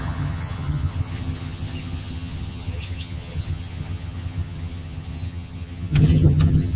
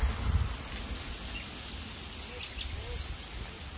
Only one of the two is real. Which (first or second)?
second